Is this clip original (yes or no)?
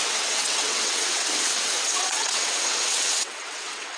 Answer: no